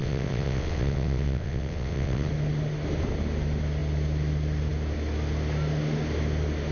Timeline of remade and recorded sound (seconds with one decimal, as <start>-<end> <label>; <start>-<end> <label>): 0.0-2.3 remade; 2.3-6.7 recorded